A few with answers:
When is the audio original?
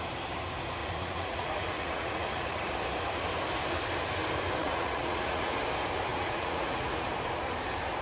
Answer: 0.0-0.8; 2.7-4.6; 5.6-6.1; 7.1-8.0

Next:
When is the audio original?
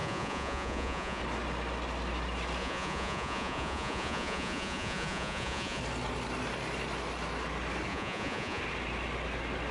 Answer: 1.2-2.6; 5.8-7.9; 8.6-9.7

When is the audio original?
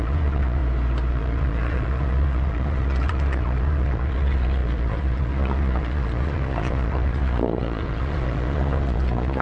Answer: 0.6-1.1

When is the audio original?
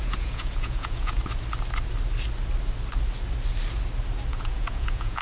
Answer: 1.2-4.3